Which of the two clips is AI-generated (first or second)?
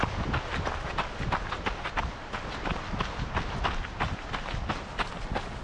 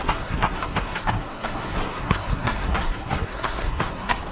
second